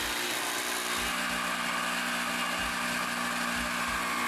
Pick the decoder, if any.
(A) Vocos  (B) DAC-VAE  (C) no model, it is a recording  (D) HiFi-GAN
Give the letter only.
C